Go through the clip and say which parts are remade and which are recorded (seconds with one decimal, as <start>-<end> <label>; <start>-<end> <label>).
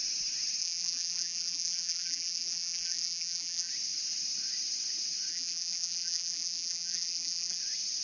0.0-0.6 recorded; 0.6-3.7 remade; 3.7-5.3 recorded; 5.3-7.6 remade; 7.6-8.0 recorded